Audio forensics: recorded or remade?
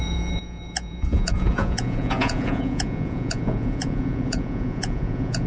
remade